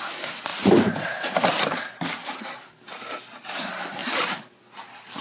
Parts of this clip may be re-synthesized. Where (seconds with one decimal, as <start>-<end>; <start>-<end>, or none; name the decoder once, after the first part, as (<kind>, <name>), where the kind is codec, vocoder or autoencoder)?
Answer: 0.5-3.1 (vocoder, BigVGAN v2); 4.0-4.6